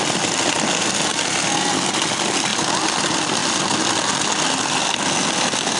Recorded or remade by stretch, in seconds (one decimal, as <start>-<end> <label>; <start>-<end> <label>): 0.0-5.8 recorded